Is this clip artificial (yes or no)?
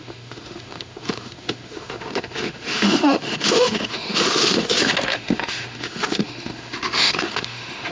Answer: yes